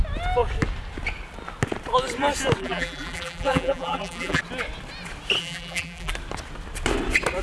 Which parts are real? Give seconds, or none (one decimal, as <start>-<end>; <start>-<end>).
0.0-2.6; 4.4-5.4; 6.1-7.4